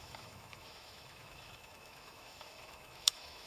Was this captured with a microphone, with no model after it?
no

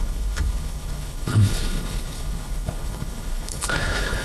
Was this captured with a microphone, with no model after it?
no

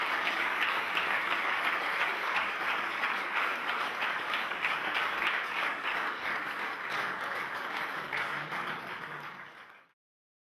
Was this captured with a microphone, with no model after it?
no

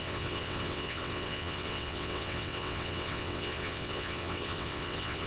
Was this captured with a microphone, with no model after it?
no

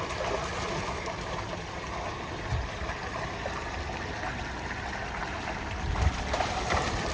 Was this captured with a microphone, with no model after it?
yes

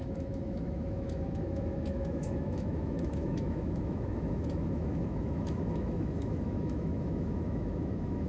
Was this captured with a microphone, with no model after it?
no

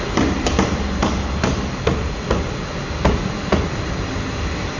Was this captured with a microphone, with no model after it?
yes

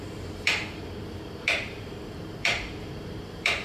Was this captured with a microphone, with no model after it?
no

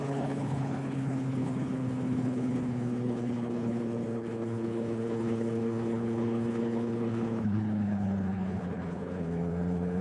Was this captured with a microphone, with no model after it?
no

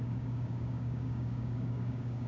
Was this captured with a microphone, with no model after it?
no